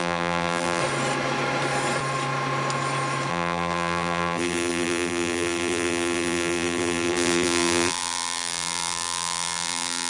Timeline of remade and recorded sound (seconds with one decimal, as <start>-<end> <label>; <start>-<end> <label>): 0.0-0.8 remade; 0.8-3.3 recorded; 3.3-10.1 remade